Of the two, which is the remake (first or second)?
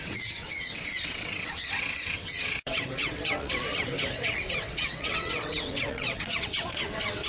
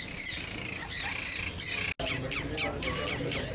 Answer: first